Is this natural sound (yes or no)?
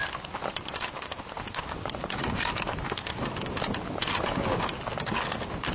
yes